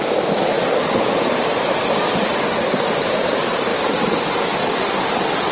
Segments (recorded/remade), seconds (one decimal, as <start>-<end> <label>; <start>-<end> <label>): 0.0-5.5 recorded